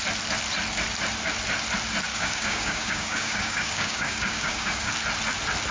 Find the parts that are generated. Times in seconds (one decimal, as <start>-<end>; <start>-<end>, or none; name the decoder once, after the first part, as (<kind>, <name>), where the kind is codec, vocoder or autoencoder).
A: 2.1-4.9 (codec, DAC)